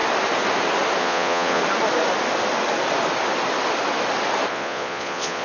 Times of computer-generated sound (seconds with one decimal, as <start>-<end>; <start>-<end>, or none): 1.0-1.6; 4.5-5.4